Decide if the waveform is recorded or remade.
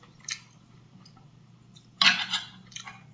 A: recorded